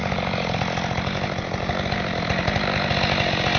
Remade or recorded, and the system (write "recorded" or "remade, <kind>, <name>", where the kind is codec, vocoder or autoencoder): recorded